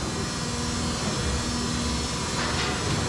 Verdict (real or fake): real